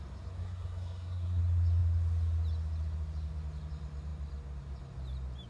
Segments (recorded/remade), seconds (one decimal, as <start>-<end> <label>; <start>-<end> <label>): 0.0-0.4 recorded; 0.4-1.4 remade; 1.4-5.5 recorded